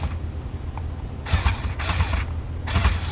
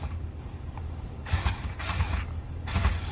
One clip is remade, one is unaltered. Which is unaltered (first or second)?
first